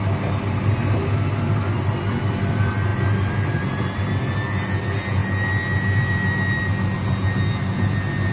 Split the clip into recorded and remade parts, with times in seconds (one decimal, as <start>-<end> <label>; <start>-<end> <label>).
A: 0.0-1.0 recorded; 1.0-1.6 remade; 1.6-2.9 recorded; 2.9-4.0 remade; 4.0-8.3 recorded